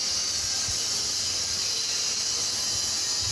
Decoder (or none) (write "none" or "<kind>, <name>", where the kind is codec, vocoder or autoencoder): none